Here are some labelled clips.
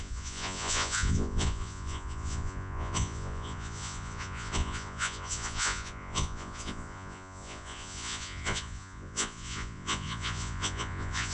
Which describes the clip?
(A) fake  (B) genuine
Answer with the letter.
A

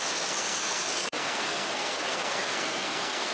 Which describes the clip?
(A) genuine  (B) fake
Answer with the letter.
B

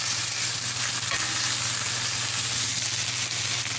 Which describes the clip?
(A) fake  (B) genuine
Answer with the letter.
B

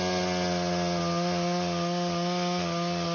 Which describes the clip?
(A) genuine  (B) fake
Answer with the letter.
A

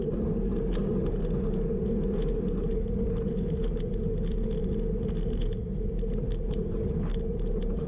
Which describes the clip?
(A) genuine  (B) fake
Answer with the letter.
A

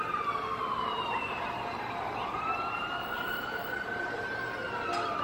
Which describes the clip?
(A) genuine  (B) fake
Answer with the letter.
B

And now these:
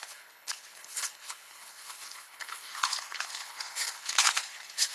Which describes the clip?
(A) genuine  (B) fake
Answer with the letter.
B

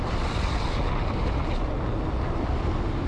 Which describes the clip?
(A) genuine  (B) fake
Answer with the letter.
A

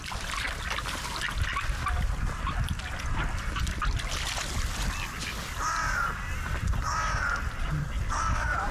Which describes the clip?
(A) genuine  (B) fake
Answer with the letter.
A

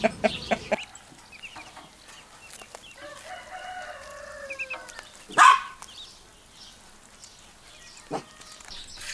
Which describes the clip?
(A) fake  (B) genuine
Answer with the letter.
B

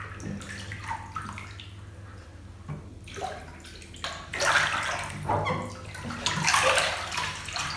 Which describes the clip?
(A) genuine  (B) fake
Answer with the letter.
A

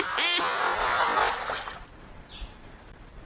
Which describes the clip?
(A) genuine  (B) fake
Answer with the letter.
A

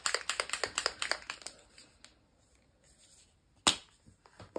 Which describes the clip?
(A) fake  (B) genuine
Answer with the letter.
B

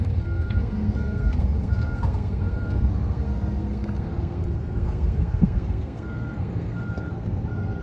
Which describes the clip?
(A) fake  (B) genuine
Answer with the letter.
A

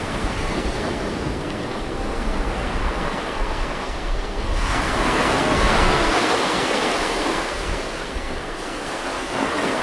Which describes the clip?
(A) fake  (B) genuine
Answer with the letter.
A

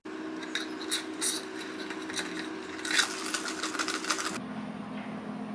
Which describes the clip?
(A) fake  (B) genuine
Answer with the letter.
B